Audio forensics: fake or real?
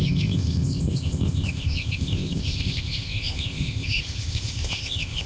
fake